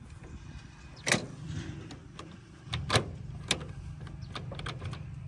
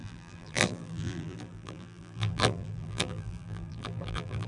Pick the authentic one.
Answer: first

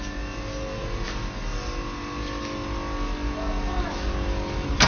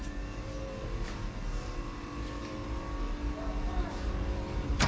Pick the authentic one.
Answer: first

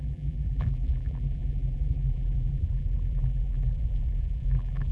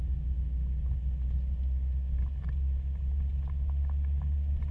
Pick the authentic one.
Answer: second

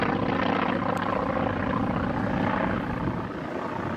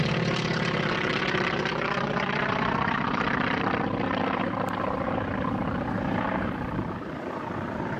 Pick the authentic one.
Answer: first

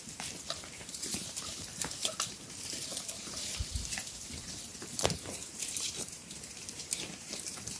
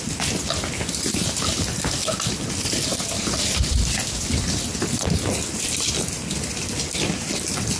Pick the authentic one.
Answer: second